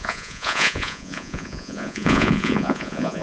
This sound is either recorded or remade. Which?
remade